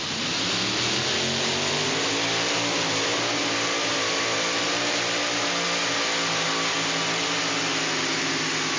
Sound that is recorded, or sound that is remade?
recorded